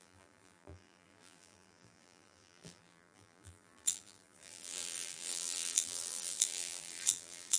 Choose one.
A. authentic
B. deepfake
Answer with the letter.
B